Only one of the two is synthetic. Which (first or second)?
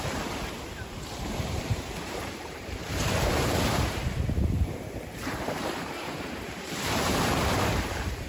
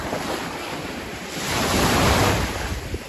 first